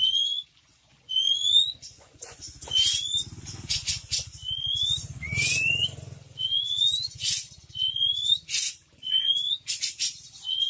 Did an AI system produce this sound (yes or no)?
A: yes